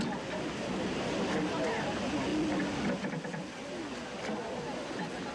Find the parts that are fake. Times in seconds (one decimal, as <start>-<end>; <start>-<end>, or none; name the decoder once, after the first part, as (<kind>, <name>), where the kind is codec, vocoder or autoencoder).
none